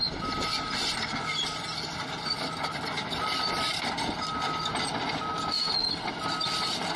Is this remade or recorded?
recorded